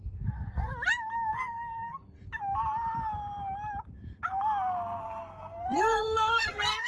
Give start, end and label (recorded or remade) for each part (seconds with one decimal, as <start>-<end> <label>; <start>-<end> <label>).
0.0-0.7 remade; 0.7-1.3 recorded; 1.3-2.0 remade; 2.0-5.0 recorded; 5.0-6.9 remade

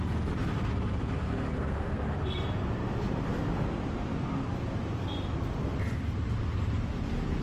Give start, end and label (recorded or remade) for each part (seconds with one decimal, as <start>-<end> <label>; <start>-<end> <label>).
0.0-1.5 recorded; 1.5-2.0 remade; 2.0-7.4 recorded

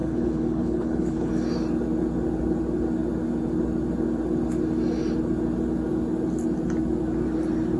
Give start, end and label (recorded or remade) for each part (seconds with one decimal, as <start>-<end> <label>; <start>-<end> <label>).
0.0-1.3 remade; 1.3-7.8 recorded

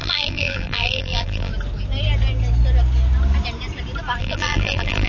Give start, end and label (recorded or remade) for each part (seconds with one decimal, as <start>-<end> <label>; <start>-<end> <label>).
0.0-1.5 remade; 1.5-4.2 recorded; 4.2-5.1 remade

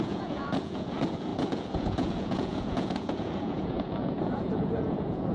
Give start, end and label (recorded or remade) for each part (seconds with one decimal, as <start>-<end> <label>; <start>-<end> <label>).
0.0-5.3 remade